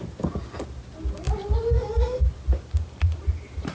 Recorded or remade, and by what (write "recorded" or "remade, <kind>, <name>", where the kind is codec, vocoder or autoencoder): recorded